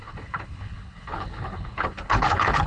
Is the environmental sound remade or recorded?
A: remade